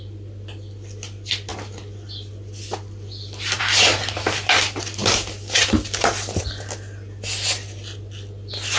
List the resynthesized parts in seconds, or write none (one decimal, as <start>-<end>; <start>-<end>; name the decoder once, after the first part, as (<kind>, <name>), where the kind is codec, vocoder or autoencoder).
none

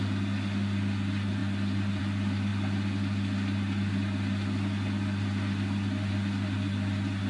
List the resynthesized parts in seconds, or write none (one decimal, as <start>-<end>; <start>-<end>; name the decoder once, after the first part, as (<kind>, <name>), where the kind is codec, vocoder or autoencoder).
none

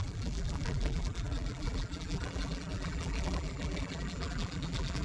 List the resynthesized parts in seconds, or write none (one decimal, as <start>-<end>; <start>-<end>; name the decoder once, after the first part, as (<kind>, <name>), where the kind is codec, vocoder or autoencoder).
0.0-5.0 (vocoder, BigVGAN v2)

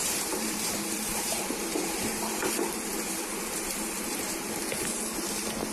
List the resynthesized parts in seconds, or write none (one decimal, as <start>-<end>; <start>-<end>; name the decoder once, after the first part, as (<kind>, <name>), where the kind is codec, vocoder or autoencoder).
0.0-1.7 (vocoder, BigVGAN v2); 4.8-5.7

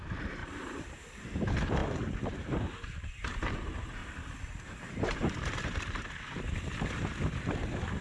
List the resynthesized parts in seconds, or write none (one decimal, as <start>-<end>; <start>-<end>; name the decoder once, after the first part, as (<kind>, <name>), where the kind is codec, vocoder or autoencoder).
0.0-4.0 (vocoder, BigVGAN v2); 4.9-8.0

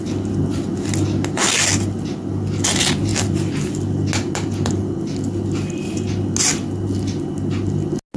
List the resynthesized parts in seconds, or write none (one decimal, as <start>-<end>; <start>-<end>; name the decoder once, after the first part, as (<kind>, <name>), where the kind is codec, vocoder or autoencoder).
none

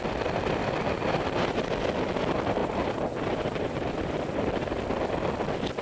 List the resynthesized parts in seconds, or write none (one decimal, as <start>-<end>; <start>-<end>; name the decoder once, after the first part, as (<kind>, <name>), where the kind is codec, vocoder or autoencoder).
0.8-1.7 (vocoder, BigVGAN v2); 2.6-4.7